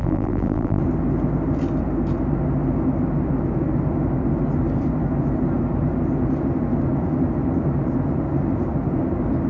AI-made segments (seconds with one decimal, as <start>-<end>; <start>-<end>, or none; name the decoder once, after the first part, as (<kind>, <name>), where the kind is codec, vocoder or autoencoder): 0.0-0.8 (vocoder, BigVGAN v2)